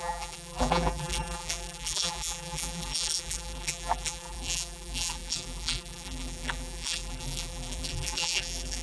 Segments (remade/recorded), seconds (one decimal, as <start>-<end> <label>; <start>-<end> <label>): 0.0-8.8 remade